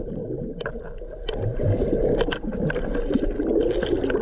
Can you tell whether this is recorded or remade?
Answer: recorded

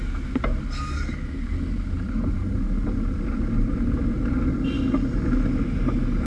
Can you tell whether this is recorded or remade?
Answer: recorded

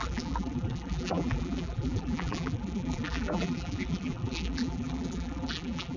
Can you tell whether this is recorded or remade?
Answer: remade